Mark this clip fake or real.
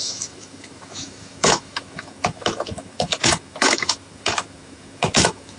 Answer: fake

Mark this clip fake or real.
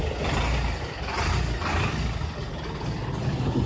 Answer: real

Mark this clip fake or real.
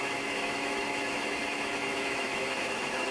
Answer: fake